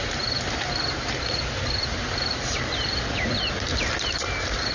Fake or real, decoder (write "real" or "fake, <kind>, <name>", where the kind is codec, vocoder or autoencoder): fake, vocoder, BigVGAN v2